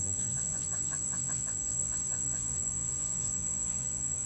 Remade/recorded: remade